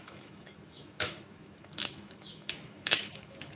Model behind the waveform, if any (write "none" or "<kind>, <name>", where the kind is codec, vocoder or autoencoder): autoencoder, DAC-VAE